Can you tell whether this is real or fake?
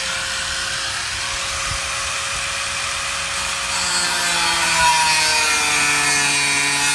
real